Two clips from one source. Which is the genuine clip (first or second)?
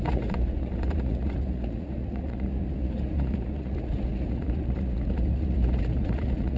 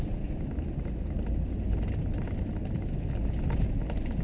second